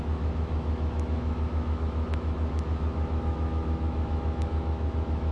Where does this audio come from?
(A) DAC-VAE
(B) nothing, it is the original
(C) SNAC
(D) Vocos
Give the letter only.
A